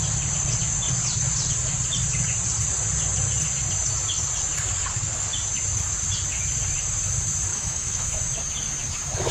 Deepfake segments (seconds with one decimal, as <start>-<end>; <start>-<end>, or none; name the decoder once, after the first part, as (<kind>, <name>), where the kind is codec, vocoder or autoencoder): 7.5-8.2 (autoencoder, DAC-VAE)